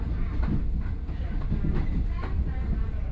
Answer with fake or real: real